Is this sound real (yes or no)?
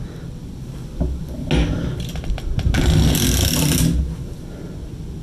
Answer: yes